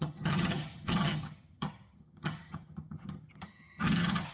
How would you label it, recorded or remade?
remade